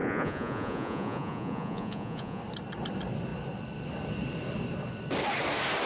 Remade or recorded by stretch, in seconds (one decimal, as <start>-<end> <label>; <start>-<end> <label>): 0.0-2.4 remade; 2.4-5.9 recorded